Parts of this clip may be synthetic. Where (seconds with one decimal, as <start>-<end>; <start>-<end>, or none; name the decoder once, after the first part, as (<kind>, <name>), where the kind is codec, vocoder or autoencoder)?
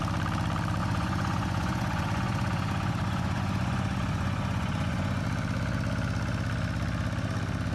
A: 0.8-5.2 (vocoder, Vocos)